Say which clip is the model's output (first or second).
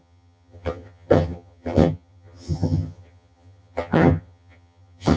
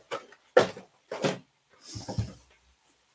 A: first